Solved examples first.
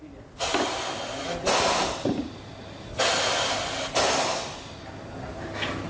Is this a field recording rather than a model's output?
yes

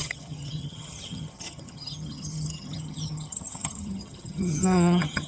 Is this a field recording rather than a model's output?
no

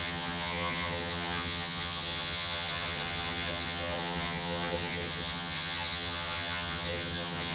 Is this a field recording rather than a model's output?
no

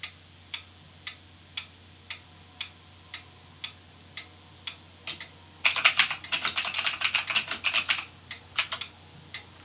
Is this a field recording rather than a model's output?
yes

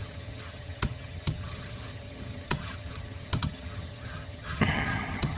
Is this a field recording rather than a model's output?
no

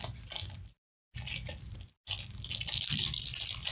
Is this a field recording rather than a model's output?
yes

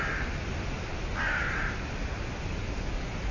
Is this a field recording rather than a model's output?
yes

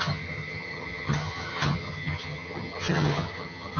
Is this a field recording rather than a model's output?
no